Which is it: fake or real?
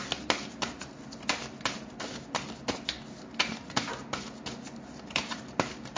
real